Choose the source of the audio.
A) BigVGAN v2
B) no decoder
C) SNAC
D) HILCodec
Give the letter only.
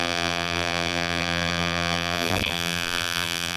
A